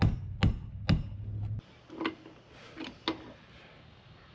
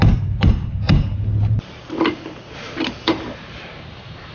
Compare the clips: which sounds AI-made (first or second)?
second